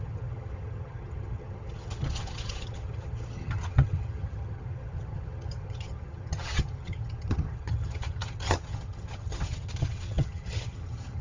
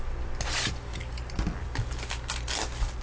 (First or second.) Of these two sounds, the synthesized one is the first